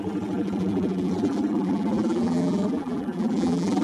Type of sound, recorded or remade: remade